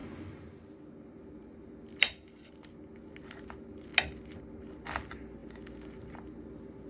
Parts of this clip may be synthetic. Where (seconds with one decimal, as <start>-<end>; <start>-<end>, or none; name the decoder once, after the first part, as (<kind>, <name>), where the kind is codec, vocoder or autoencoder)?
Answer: 0.0-2.6 (vocoder, BigVGAN v2)